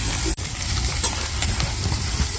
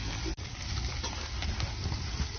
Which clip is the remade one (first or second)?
first